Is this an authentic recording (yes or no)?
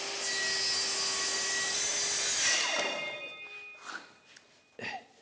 yes